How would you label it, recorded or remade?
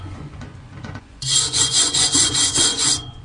remade